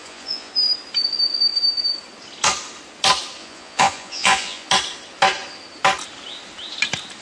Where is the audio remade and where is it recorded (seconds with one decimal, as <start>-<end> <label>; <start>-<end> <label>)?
0.0-0.5 remade; 0.5-3.4 recorded; 3.4-4.7 remade; 4.7-7.2 recorded